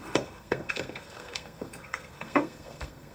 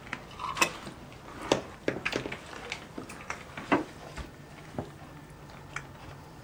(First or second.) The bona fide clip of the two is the second